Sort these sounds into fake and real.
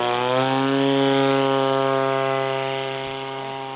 real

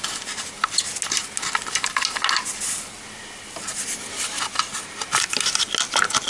real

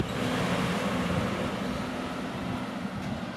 real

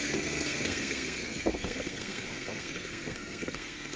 fake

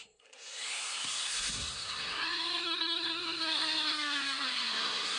fake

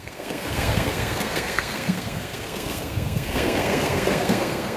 fake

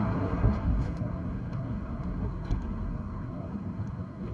fake